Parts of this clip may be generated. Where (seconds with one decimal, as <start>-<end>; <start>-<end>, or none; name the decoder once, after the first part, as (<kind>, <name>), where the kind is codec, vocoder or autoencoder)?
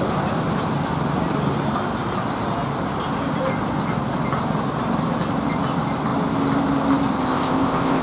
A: 7.2-8.0 (codec, ZipCodec)